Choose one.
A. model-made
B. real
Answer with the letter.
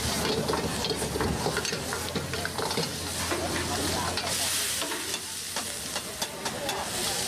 B